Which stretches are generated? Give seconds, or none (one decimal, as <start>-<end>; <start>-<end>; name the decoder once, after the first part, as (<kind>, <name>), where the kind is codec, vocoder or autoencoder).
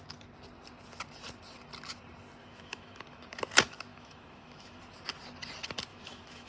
2.4-3.0 (autoencoder, DAC-VAE); 3.9-4.8; 5.9-6.5